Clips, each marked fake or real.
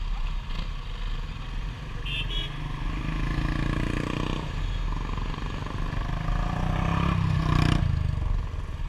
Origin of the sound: real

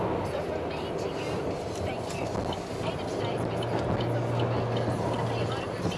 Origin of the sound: real